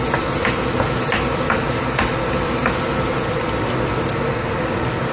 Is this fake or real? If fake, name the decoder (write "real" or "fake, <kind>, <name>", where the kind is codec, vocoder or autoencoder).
real